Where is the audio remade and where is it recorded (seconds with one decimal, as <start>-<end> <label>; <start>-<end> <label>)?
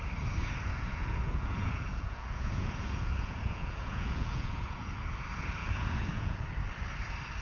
0.0-0.7 recorded; 0.7-5.0 remade; 5.0-5.6 recorded; 5.6-6.4 remade; 6.4-7.4 recorded